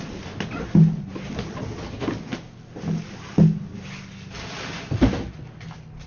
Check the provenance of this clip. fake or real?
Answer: real